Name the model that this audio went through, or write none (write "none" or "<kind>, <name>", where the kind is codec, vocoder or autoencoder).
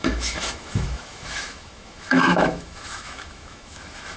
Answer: autoencoder, DAC-VAE